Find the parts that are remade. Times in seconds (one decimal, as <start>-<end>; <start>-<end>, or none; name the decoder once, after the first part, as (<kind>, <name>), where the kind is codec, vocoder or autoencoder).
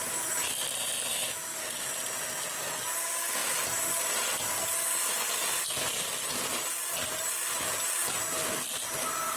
1.1-1.9 (autoencoder, DAC-VAE)